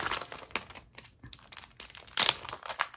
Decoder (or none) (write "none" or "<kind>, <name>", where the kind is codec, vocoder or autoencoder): none